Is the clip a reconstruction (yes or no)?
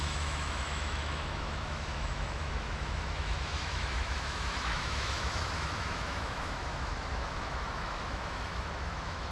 yes